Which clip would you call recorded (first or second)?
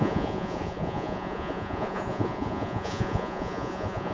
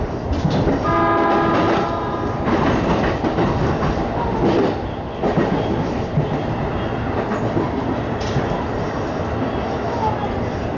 second